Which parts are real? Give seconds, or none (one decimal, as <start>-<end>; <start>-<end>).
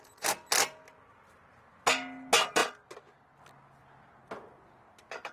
0.0-5.3